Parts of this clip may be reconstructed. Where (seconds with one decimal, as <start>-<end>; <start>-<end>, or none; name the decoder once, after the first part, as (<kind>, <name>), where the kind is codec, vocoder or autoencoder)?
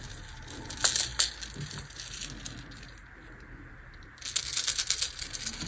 none